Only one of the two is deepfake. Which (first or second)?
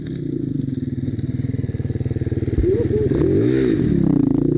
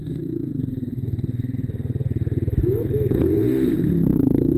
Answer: second